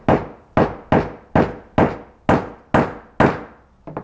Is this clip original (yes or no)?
yes